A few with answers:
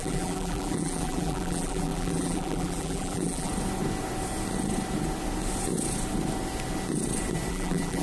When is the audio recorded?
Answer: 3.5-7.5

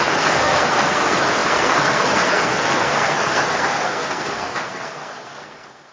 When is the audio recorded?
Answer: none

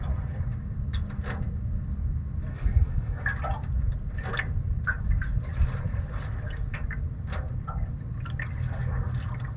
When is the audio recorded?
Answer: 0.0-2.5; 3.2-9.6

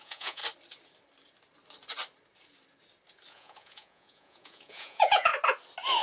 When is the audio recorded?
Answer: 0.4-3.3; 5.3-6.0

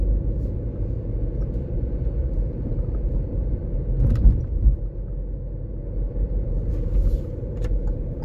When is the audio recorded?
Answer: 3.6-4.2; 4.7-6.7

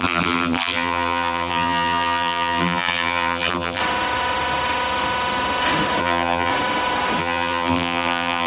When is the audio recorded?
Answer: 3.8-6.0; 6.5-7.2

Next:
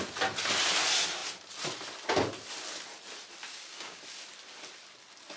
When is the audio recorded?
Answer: 0.0-3.5; 4.0-5.4